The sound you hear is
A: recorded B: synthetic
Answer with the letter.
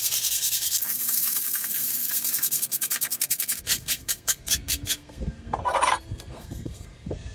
B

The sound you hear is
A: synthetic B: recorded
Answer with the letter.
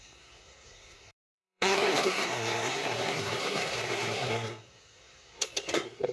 A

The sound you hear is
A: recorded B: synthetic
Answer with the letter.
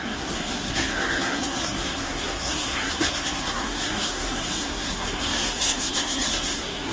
B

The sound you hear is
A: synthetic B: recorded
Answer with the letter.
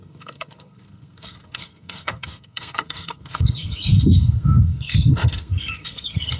A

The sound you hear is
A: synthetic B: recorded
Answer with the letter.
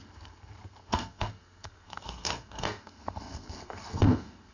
A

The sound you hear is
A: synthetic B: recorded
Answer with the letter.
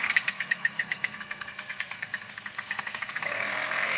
A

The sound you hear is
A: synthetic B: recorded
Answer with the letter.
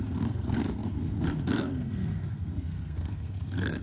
A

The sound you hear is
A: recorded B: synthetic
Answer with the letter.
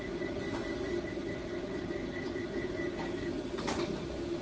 A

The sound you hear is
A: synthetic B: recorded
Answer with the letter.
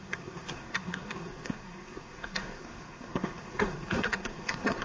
A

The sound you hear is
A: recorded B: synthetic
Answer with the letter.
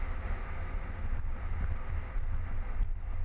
A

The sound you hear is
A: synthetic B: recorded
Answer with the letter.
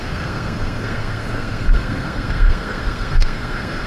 A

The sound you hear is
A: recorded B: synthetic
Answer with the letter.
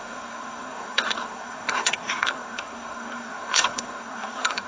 B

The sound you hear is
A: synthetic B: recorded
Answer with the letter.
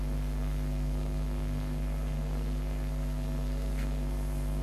A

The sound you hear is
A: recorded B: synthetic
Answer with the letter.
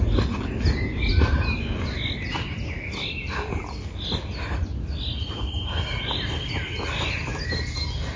A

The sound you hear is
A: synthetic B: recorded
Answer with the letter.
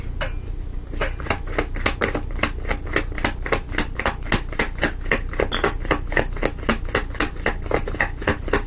B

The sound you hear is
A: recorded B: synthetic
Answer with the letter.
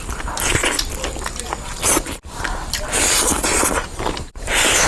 A